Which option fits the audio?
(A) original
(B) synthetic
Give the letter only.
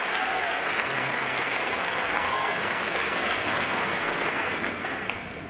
B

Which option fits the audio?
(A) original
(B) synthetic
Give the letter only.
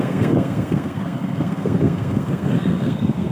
B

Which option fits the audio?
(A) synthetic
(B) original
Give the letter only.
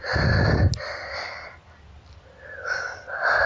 B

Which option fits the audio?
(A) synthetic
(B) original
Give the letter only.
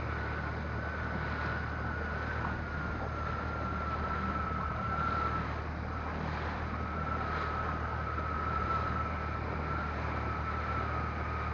B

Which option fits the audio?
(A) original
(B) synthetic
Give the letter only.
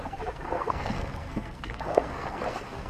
B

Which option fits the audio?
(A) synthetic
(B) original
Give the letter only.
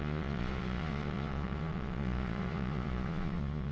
A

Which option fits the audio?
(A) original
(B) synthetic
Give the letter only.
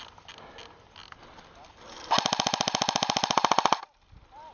A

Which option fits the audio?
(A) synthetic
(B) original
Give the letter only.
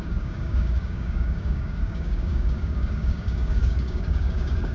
A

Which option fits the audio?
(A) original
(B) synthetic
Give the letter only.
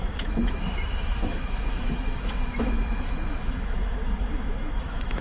B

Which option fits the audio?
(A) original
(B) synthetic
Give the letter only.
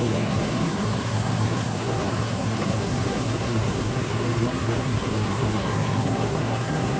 B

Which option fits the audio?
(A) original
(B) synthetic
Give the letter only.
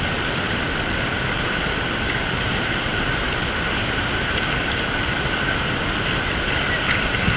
A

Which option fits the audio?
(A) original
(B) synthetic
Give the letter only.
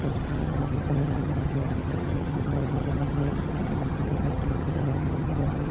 B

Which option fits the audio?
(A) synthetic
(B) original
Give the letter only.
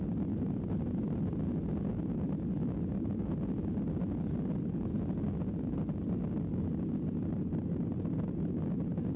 B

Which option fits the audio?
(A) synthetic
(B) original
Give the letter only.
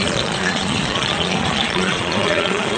A